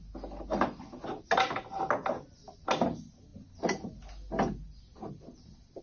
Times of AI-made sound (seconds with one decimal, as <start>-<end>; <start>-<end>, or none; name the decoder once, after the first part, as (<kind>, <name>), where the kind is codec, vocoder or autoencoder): none